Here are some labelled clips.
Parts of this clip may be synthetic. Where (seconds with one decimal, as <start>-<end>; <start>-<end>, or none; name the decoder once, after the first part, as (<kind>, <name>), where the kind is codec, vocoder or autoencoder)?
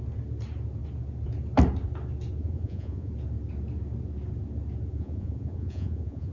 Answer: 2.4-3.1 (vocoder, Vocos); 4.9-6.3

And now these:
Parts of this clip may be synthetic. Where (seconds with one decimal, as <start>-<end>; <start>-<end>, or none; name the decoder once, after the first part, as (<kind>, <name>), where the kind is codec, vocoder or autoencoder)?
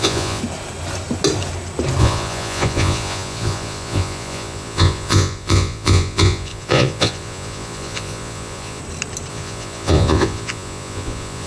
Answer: 0.0-0.4 (vocoder, Vocos); 2.0-8.8; 9.3-11.5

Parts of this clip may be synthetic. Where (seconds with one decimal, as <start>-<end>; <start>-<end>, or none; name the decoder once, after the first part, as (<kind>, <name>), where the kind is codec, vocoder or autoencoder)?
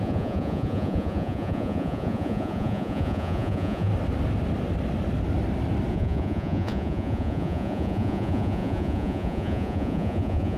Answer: 0.0-3.9 (vocoder, Vocos); 5.9-10.6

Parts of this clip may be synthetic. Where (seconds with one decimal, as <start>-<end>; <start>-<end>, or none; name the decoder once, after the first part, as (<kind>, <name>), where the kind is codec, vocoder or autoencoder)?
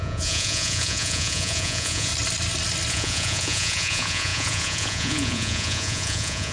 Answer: 0.0-2.1 (vocoder, Vocos); 2.9-6.5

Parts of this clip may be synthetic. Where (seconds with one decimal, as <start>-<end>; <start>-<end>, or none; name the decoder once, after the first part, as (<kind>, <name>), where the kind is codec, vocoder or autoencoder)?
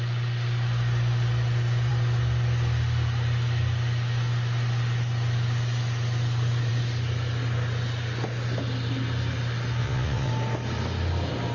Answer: 9.8-10.3 (vocoder, Vocos)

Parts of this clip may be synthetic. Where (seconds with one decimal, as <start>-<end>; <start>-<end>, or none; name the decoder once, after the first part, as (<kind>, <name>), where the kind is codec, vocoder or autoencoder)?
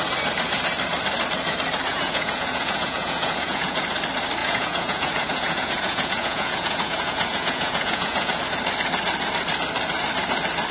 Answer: 1.9-3.8 (vocoder, Vocos); 4.4-8.4